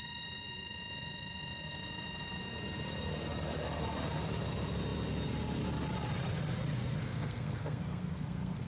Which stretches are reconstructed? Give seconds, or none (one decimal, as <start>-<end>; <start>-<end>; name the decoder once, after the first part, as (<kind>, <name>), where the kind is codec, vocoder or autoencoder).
7.0-8.7 (codec, SNAC)